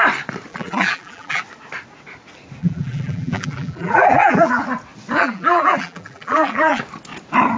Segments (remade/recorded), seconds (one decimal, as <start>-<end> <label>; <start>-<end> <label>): 0.0-0.5 recorded; 0.5-1.4 remade; 1.4-2.6 recorded; 2.6-4.6 remade; 4.6-5.2 recorded; 5.2-6.8 remade; 6.8-7.6 recorded